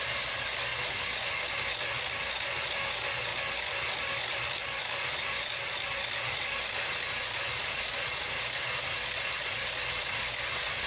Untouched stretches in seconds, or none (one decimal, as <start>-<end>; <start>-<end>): 0.0-10.9